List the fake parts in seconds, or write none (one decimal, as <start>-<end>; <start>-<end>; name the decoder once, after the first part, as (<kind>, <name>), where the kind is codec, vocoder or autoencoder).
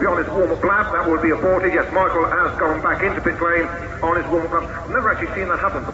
none